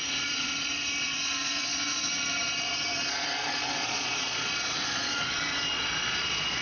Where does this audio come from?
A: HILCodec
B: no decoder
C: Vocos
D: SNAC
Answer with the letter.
C